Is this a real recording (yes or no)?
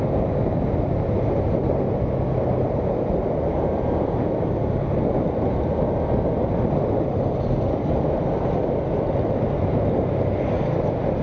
yes